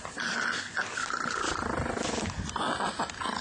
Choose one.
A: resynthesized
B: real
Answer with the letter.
B